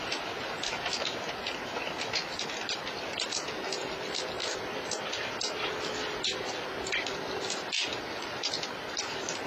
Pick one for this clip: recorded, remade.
recorded